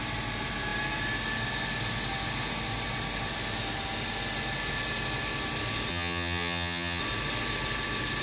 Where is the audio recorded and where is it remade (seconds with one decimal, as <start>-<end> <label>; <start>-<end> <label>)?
0.0-5.9 recorded; 5.9-7.0 remade; 7.0-8.2 recorded